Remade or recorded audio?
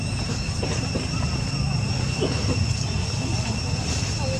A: recorded